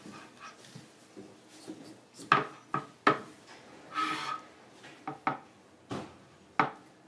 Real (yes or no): yes